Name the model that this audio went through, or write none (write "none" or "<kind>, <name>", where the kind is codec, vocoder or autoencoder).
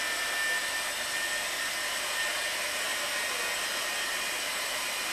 none